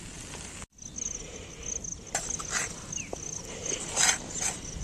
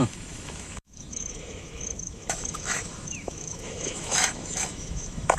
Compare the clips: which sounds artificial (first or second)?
second